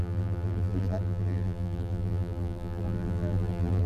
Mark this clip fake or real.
fake